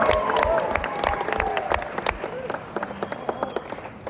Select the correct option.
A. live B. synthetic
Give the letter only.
A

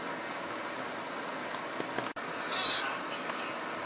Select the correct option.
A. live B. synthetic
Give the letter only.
A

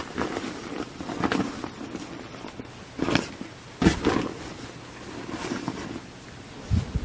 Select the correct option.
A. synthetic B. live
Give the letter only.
B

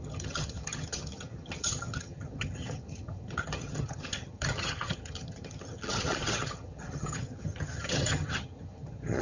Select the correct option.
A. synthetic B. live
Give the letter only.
A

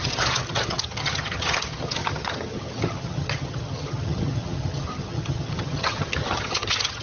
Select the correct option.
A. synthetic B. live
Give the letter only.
A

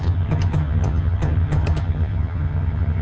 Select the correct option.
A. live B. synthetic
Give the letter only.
B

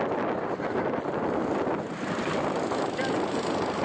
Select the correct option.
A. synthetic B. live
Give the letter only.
B